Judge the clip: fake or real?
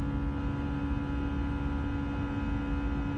real